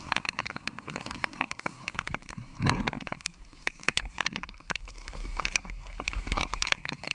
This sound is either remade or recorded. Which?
remade